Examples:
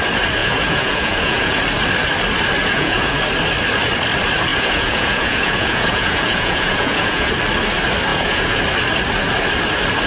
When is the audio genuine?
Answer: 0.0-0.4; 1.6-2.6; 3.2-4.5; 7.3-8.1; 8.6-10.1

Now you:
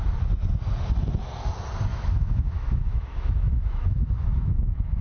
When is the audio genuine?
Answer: 0.0-1.9

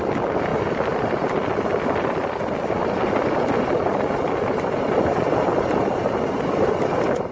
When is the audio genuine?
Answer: 0.0-7.3